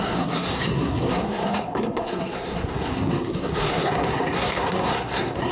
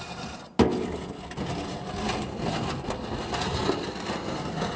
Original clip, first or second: second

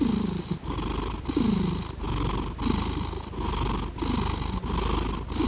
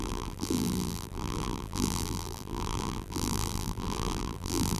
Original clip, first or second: first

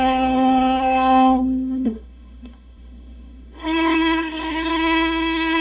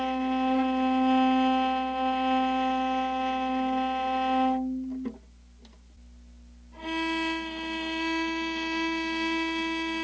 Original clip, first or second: second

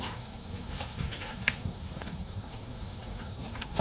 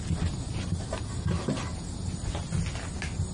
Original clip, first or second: second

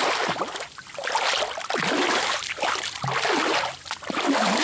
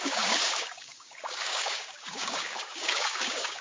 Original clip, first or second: first